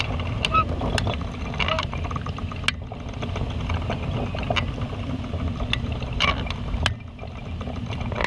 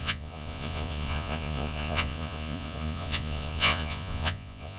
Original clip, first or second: first